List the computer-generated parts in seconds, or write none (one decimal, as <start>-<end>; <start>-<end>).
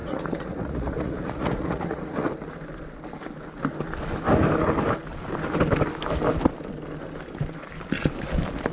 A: 0.0-2.3